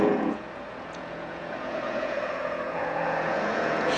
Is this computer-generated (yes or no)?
yes